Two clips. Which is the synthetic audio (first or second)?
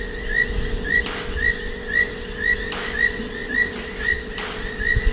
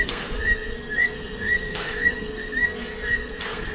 second